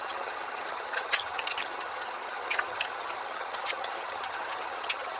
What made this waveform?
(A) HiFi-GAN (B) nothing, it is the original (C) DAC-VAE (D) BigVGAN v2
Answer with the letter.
A